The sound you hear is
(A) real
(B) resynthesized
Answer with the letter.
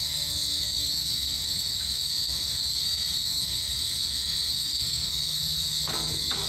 B